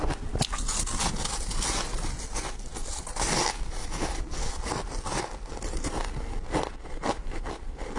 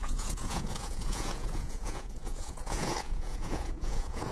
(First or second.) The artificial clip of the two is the second